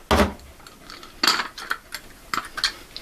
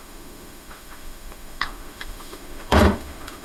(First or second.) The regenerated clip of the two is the second